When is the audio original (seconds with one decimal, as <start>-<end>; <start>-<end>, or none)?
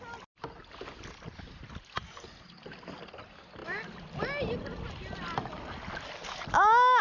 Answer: 0.0-7.0